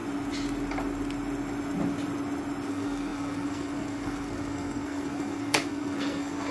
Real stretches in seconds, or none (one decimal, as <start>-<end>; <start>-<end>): 0.0-2.7